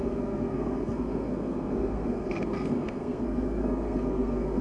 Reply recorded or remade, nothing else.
remade